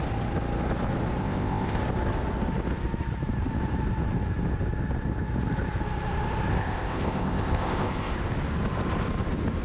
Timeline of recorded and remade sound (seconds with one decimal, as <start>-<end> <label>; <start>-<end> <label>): 0.0-1.2 recorded; 1.2-1.8 remade; 1.8-6.5 recorded; 6.5-8.1 remade; 8.1-9.6 recorded